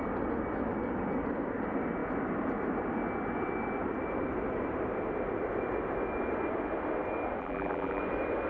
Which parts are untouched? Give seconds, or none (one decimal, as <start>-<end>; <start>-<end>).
0.0-7.4; 8.0-8.5